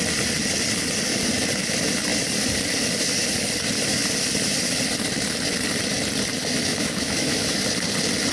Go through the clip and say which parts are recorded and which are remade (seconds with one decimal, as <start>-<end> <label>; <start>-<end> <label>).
0.0-6.7 recorded; 6.7-7.6 remade; 7.6-8.3 recorded